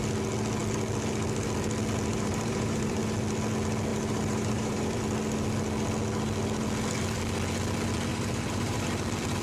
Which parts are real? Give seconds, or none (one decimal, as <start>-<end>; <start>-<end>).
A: 0.0-2.1; 3.0-3.9; 5.0-8.1; 8.8-9.4